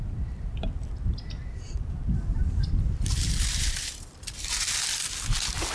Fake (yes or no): no